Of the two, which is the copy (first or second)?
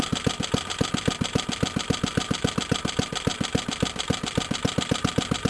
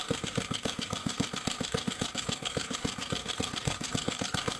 second